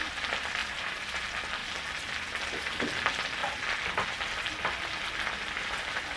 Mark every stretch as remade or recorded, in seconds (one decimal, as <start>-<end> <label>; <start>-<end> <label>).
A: 0.0-0.6 recorded; 0.6-1.2 remade; 1.2-6.2 recorded